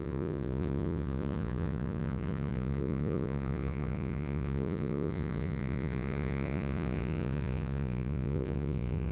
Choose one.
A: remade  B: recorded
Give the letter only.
A